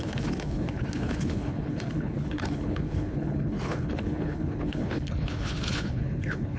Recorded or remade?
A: remade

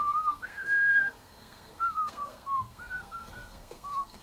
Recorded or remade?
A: remade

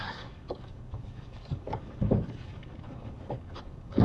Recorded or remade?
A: remade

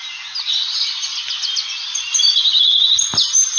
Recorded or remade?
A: recorded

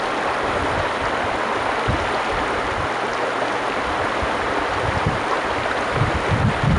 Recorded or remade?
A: recorded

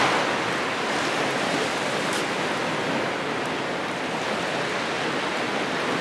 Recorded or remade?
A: recorded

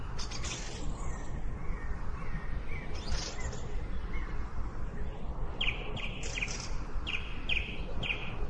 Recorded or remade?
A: recorded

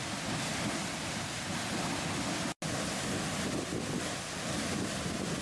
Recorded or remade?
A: recorded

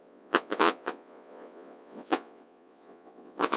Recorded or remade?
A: remade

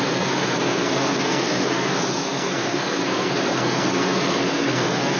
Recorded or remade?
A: remade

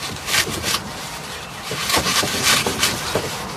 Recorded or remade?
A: remade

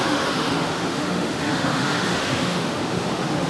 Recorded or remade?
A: remade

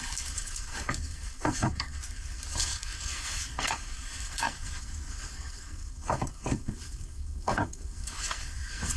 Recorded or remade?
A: remade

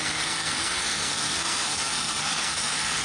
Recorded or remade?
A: remade